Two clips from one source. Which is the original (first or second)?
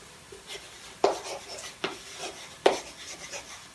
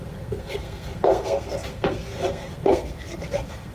first